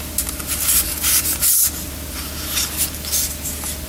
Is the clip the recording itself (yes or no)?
yes